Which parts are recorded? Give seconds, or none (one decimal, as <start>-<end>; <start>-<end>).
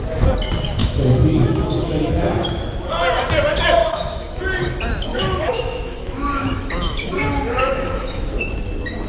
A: 0.0-0.8; 2.6-3.8; 4.4-5.1; 8.5-9.1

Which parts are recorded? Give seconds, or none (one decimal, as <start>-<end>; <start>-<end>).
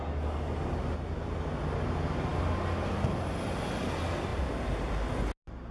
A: 0.0-5.7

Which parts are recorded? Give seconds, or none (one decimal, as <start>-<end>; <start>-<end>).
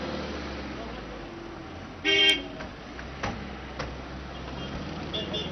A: 0.0-5.5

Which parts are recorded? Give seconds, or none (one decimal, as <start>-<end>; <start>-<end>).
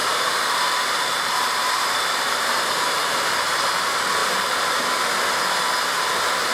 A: 3.3-4.2; 4.9-6.5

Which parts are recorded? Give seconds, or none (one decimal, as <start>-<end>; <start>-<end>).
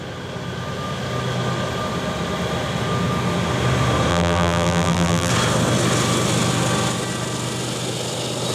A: 0.0-4.1; 5.3-8.5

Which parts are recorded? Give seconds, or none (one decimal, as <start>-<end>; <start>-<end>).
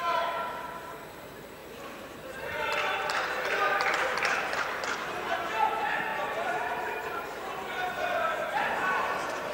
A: none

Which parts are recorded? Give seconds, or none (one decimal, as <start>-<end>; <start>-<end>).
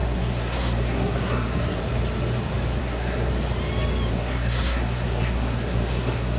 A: 1.8-2.8; 3.3-4.1